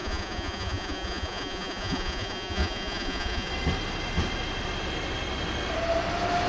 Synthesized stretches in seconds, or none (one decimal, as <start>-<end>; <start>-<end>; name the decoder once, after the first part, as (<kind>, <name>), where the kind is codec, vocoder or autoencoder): 0.0-3.5 (vocoder, Vocos)

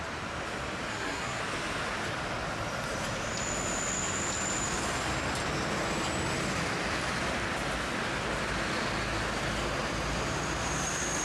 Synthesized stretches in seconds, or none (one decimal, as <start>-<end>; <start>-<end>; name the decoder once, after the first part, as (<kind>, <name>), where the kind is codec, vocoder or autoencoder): 0.9-1.4 (codec, SNAC)

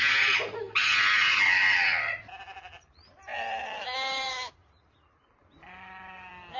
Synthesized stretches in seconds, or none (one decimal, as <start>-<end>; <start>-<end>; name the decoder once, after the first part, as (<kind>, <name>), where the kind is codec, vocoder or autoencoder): none

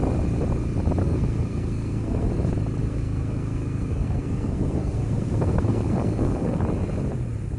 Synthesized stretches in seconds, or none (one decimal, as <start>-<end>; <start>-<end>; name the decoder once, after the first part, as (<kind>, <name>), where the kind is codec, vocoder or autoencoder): 1.0-2.3 (codec, SNAC); 2.8-6.6